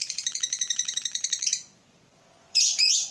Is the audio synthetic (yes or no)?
yes